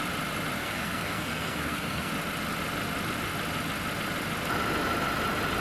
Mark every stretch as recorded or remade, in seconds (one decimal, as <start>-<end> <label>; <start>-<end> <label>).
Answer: 0.0-0.6 recorded; 0.6-2.1 remade; 2.1-5.6 recorded